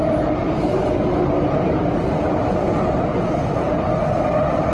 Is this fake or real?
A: real